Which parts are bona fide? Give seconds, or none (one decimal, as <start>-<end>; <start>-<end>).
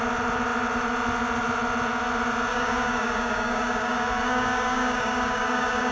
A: 0.0-2.5